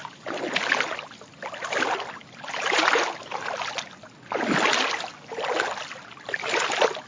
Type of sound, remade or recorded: recorded